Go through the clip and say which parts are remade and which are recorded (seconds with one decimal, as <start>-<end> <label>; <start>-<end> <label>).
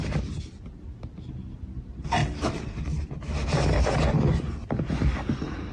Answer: 0.0-5.7 recorded